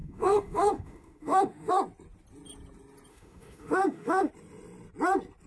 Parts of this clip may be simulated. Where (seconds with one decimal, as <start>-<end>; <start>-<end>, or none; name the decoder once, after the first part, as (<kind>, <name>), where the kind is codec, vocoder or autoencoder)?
0.0-1.7 (autoencoder, DAC-VAE); 3.1-4.3